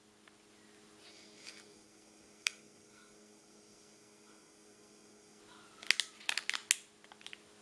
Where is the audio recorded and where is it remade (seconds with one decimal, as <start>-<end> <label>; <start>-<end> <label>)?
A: 0.0-1.1 recorded; 1.1-5.4 remade; 5.4-7.6 recorded